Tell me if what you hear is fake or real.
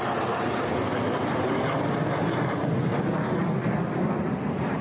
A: real